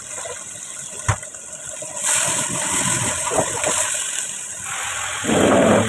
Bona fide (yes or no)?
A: yes